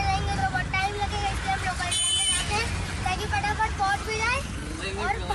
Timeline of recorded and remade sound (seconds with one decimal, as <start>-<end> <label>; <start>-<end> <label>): 0.0-5.3 recorded